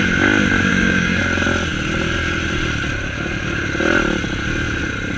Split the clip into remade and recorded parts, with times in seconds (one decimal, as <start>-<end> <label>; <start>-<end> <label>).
0.0-0.7 recorded; 0.7-1.2 remade; 1.2-5.2 recorded